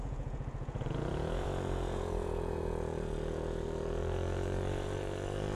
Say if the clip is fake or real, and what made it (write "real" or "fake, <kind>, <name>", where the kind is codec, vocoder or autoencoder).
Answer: fake, vocoder, Vocos